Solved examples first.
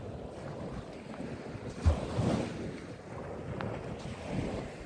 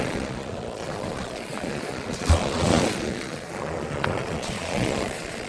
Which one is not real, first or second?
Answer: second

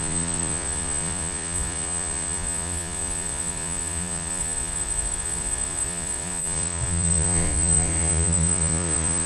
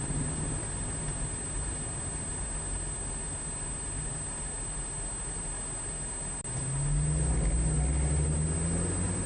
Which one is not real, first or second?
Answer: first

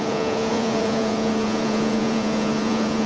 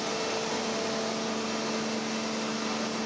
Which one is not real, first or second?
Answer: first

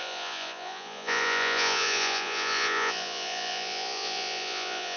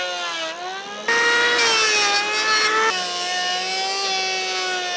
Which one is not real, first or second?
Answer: first